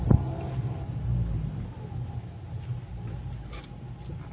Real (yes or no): yes